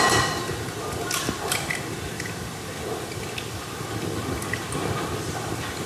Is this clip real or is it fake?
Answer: real